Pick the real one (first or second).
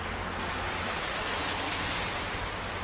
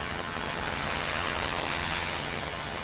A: first